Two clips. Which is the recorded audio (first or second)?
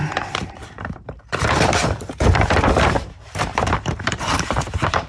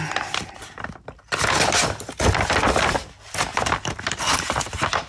second